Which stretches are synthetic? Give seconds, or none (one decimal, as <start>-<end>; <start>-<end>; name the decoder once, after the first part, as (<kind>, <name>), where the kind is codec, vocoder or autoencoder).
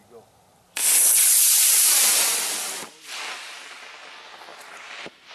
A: 4.5-5.3 (vocoder, BigVGAN v2)